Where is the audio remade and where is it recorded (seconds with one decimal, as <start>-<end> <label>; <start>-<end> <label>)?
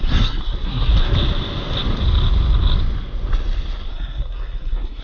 0.0-0.9 remade; 0.9-3.9 recorded; 3.9-5.0 remade